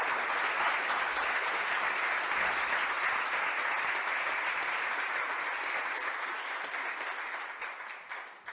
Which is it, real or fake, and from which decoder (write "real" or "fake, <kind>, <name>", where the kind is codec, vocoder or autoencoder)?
real